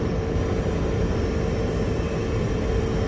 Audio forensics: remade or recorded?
remade